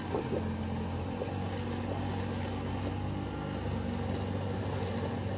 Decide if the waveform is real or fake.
real